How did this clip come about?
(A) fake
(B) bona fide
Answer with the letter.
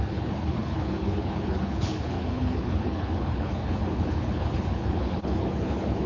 A